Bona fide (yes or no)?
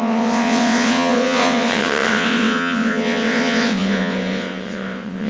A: no